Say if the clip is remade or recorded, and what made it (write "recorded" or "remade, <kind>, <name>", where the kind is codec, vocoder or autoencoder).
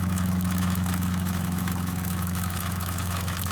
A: remade, autoencoder, DAC-VAE